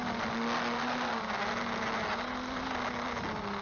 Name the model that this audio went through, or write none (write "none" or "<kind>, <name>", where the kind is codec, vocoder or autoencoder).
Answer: none